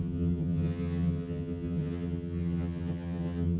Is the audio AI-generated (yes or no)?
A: yes